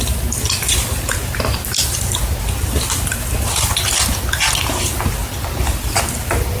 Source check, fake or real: real